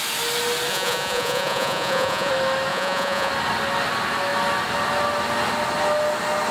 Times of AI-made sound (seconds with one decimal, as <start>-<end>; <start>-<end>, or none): 0.7-2.3; 2.7-3.3